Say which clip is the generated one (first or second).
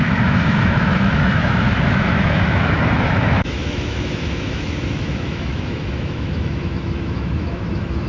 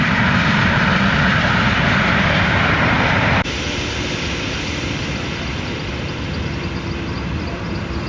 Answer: first